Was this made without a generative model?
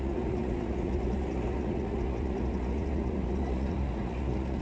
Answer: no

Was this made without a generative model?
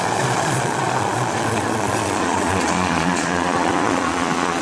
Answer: no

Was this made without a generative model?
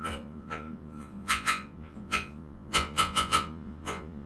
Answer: no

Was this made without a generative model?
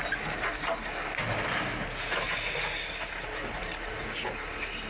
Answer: yes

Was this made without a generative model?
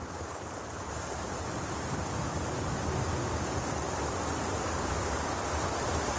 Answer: yes